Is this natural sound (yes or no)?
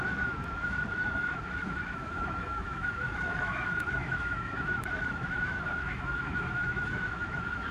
no